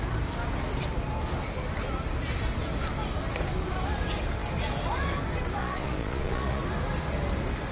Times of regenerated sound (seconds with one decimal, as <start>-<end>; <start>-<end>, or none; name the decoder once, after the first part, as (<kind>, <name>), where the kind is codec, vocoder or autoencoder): 5.6-6.6 (vocoder, Vocos)